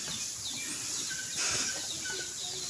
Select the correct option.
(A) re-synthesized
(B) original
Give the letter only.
B